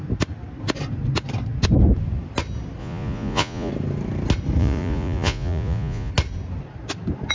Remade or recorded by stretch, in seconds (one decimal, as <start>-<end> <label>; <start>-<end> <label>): 0.0-2.8 recorded; 2.8-3.7 remade; 3.7-4.6 recorded; 4.6-6.1 remade; 6.1-7.3 recorded